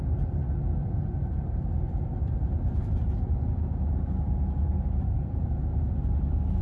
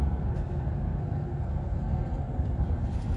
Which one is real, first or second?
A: first